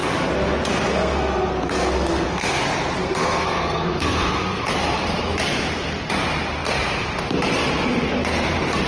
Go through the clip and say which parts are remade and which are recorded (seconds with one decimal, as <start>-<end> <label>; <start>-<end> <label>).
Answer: 0.0-0.9 recorded; 0.9-2.6 remade; 2.6-3.0 recorded; 3.0-4.6 remade; 4.6-8.9 recorded